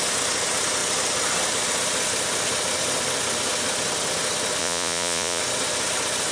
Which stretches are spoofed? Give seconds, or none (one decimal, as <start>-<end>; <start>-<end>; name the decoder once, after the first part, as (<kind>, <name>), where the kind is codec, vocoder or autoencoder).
4.6-5.4 (vocoder, Vocos)